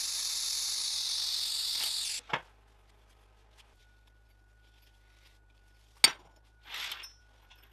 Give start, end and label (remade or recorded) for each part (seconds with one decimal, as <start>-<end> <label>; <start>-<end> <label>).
0.0-7.7 recorded